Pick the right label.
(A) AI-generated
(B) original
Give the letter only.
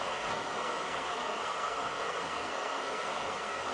A